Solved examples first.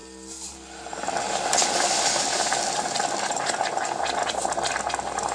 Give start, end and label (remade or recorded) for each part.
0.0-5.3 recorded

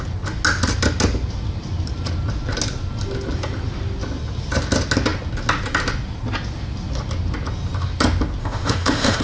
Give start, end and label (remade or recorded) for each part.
0.0-8.4 recorded; 8.4-9.2 remade

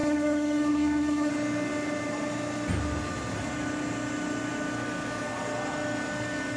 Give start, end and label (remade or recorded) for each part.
0.0-1.3 remade; 1.3-6.6 recorded

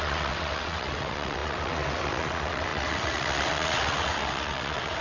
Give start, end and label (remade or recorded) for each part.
0.0-5.0 remade

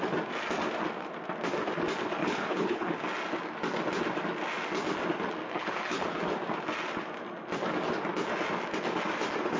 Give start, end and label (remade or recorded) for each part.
0.0-2.2 recorded; 2.2-2.9 remade; 2.9-5.5 recorded; 5.5-6.2 remade; 6.2-9.6 recorded